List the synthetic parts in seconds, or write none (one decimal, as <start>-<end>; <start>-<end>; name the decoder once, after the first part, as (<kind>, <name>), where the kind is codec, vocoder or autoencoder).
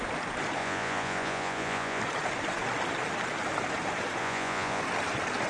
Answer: 0.6-2.0 (vocoder, Vocos); 4.2-4.8